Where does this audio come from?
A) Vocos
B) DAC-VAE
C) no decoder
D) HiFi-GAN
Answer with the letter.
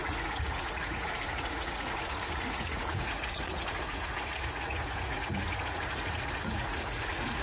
A